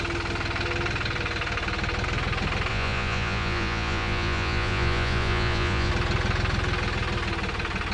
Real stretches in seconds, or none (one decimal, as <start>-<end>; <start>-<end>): 0.0-2.7; 5.9-7.9